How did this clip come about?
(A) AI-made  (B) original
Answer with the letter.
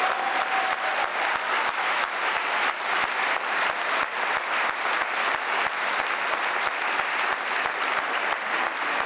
B